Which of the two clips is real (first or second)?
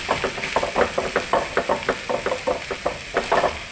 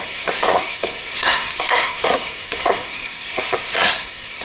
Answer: first